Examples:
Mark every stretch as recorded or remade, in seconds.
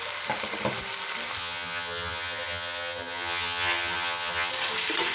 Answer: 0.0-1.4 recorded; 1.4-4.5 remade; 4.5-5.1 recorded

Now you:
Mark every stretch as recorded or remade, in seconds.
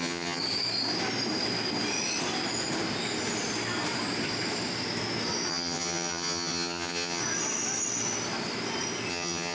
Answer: 0.0-0.4 remade; 0.4-5.5 recorded; 5.5-7.2 remade; 7.2-9.1 recorded; 9.1-9.5 remade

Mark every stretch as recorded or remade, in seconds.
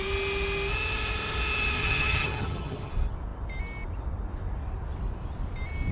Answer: 0.0-1.8 recorded; 1.8-2.9 remade; 2.9-5.9 recorded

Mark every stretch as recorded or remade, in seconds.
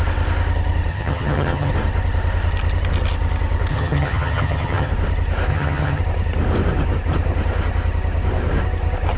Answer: 0.0-0.9 recorded; 0.9-1.7 remade; 1.7-3.7 recorded; 3.7-4.9 remade; 4.9-5.5 recorded; 5.5-6.0 remade; 6.0-9.2 recorded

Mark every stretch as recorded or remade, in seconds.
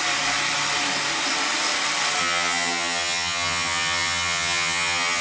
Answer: 0.0-2.2 recorded; 2.2-5.2 remade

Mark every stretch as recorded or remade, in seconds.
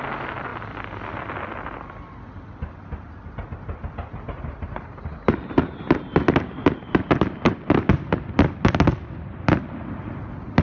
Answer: 0.0-10.6 recorded